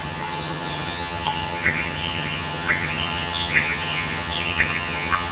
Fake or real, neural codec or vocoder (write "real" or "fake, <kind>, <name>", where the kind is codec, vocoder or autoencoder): fake, vocoder, HiFi-GAN